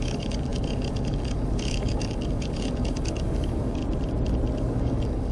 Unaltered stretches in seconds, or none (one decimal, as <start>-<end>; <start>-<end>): 3.8-4.6

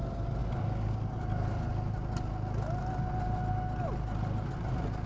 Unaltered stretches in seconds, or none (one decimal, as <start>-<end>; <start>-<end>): 0.0-5.1